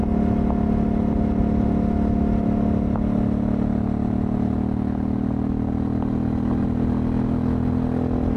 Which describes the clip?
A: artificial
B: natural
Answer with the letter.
B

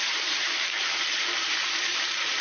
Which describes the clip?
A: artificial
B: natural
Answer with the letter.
A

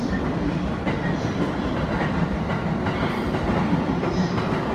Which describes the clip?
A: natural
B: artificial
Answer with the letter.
B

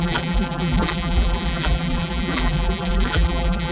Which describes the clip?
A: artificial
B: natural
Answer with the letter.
A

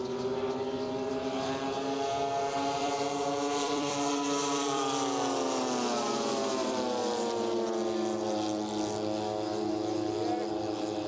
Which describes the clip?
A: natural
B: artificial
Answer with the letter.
B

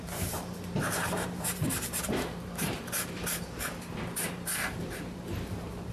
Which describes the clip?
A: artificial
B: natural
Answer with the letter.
A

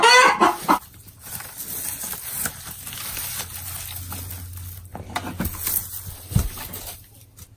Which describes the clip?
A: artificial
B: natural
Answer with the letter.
B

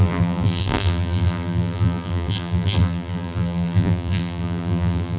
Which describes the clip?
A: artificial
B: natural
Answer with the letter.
A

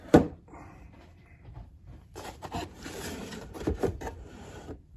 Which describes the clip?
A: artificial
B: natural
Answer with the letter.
A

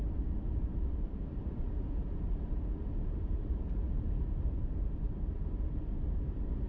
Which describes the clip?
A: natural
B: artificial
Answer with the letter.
B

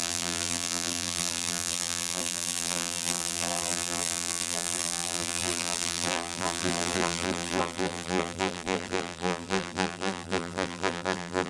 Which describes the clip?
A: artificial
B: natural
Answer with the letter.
A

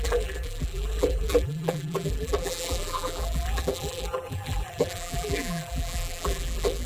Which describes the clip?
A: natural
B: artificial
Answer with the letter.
B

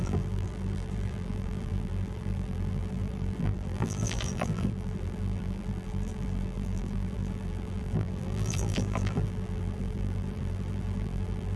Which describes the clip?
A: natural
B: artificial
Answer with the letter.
B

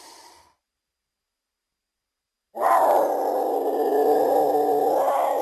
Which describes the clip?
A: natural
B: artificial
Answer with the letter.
A